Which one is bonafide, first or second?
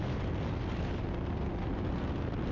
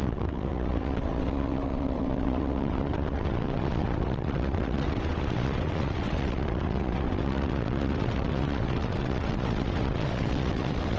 first